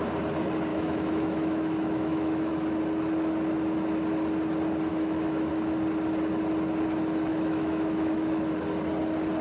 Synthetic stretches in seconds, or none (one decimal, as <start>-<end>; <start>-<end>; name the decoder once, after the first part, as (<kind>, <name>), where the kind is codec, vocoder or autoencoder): 0.7-2.5 (autoencoder, DAC-VAE); 4.9-5.5; 7.3-8.5

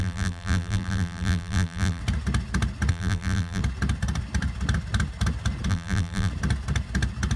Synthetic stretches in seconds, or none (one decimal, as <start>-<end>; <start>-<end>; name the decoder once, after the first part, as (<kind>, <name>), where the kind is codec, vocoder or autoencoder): 0.0-2.0 (vocoder, BigVGAN v2); 2.9-3.6; 5.7-6.3

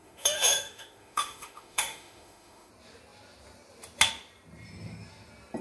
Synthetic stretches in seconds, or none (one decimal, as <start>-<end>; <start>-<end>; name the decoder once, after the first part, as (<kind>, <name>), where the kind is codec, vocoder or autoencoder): 0.0-2.7 (autoencoder, DAC-VAE)

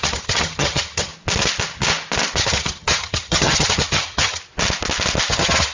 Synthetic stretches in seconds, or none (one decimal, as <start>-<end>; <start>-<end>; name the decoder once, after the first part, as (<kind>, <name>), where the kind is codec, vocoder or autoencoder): 0.0-1.1 (vocoder, HiFi-GAN); 2.4-4.4; 5.3-5.7

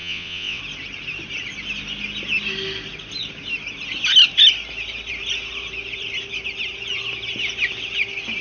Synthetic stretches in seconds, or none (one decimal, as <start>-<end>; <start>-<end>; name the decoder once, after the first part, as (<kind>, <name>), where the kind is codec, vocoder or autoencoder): 0.0-0.6 (vocoder, WaveNeXt)